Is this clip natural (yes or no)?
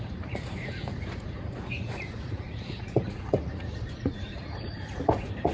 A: no